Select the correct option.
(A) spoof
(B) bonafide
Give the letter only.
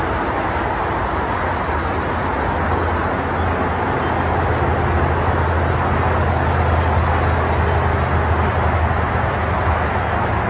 B